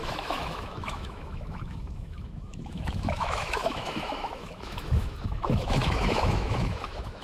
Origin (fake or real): fake